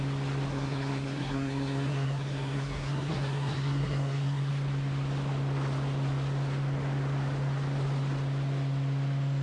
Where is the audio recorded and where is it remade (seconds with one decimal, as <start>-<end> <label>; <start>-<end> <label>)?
0.0-0.5 recorded; 0.5-4.5 remade; 4.5-9.4 recorded